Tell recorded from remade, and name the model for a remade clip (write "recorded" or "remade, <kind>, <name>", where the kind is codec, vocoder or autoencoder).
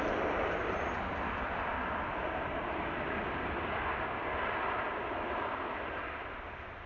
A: recorded